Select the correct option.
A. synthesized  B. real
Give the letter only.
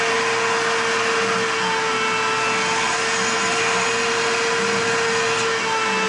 B